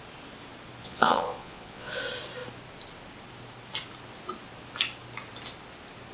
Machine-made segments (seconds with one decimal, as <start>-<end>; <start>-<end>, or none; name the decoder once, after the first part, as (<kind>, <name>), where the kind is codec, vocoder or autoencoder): 0.8-2.0 (vocoder, Vocos)